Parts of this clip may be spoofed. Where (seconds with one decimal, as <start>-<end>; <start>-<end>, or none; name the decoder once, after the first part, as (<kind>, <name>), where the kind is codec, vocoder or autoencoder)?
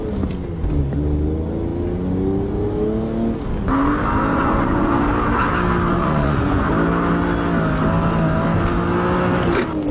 4.3-4.9 (vocoder, Vocos); 5.9-6.7